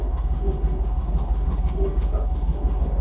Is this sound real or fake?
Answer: fake